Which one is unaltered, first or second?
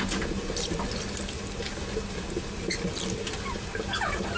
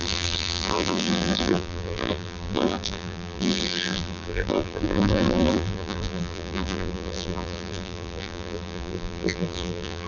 first